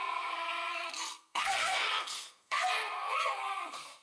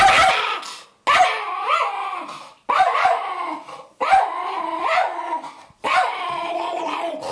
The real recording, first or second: second